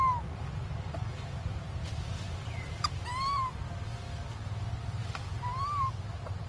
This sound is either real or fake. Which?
fake